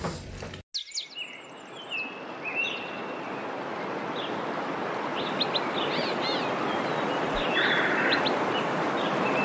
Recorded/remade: recorded